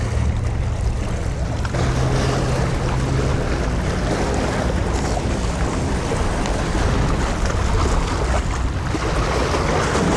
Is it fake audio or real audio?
real